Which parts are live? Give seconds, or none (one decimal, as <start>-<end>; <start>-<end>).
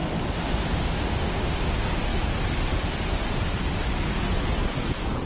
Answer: 0.0-0.7; 1.6-5.3